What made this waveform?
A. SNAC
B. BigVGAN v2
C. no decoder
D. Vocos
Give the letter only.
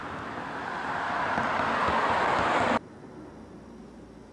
C